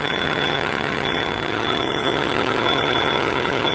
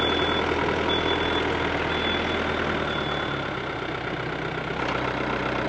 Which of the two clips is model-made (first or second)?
first